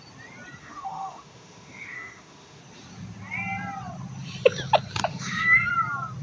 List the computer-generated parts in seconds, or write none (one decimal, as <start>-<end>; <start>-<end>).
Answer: 0.6-2.6; 5.1-5.7